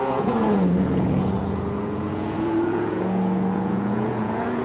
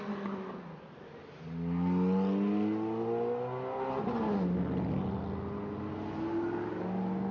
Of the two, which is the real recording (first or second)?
second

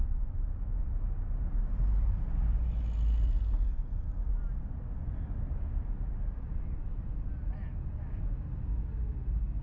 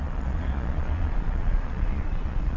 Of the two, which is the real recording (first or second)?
first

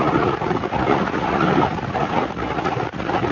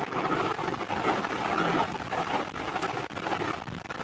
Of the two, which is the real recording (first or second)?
second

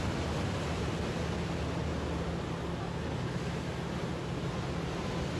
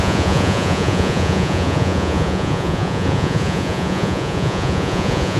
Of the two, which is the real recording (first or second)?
first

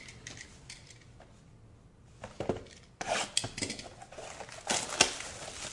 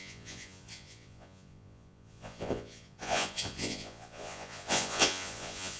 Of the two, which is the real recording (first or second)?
first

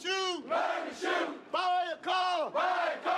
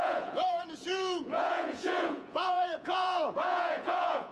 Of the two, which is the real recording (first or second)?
first